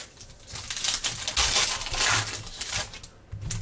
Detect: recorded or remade recorded